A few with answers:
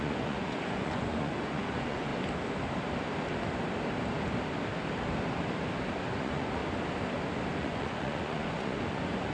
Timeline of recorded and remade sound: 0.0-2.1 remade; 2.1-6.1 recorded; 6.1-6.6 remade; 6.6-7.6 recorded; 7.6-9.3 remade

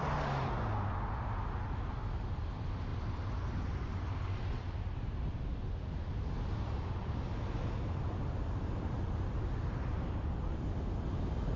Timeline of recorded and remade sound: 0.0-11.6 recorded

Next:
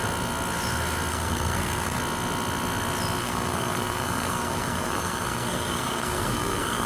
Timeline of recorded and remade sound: 0.0-1.1 recorded; 1.1-2.0 remade; 2.0-3.2 recorded; 3.2-6.9 remade

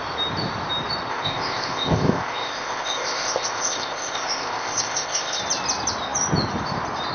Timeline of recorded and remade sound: 0.0-1.1 recorded; 1.1-5.4 remade; 5.4-7.1 recorded